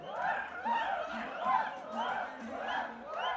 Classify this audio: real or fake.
real